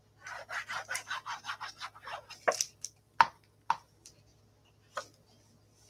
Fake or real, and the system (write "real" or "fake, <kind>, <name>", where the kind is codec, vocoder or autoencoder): real